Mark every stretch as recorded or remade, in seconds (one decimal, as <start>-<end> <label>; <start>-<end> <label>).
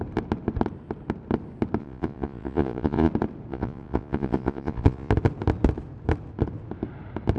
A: 0.0-1.8 recorded; 1.8-3.1 remade; 3.1-3.5 recorded; 3.5-5.1 remade; 5.1-7.4 recorded